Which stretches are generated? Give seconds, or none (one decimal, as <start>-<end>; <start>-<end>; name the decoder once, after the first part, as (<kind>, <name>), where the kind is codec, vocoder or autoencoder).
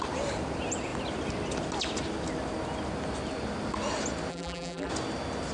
4.3-4.9 (vocoder, BigVGAN v2)